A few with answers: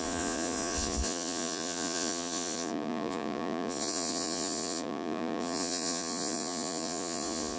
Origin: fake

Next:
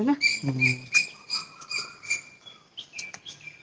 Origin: real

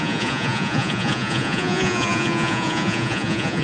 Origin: fake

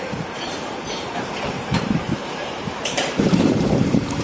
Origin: fake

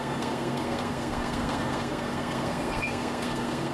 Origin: fake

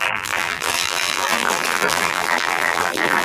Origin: fake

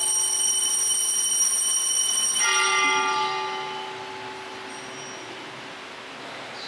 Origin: real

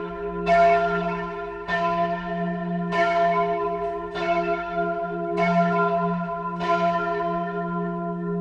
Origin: fake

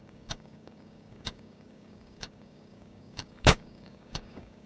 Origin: fake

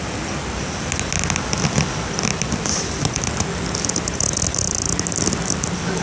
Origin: real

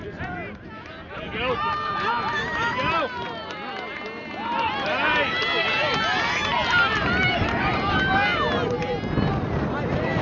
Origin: real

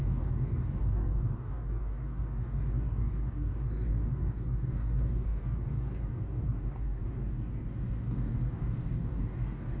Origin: fake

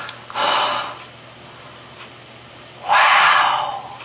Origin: real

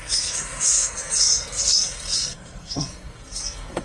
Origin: fake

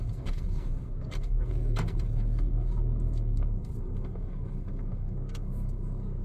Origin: fake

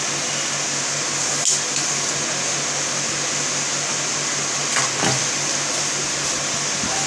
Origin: real